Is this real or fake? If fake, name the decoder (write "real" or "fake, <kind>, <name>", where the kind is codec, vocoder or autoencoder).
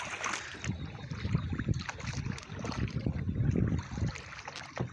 real